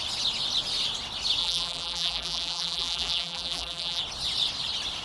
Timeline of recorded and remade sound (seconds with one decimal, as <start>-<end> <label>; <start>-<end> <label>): 0.0-1.4 recorded; 1.4-4.0 remade; 4.0-5.0 recorded